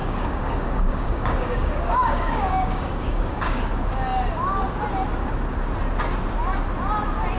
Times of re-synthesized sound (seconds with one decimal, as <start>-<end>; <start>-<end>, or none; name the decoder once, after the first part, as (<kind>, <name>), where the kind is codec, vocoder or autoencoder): 0.0-3.6 (codec, DAC)